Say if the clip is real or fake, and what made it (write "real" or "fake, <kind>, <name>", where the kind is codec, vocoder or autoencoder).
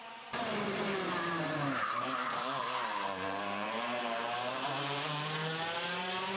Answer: fake, vocoder, BigVGAN v2